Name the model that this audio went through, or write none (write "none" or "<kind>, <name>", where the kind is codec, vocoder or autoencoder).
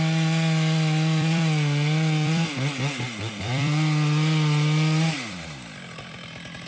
vocoder, BigVGAN v2